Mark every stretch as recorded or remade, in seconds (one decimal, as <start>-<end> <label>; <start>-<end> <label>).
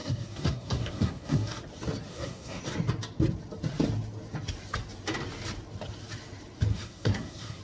0.0-1.6 remade; 1.6-2.1 recorded; 2.1-2.6 remade; 2.6-6.7 recorded; 6.7-7.6 remade